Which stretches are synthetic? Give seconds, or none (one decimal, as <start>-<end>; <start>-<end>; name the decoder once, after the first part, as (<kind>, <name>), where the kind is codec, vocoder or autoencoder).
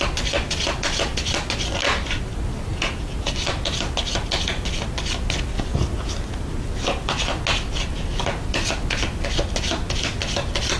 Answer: 2.7-3.3 (vocoder, Vocos)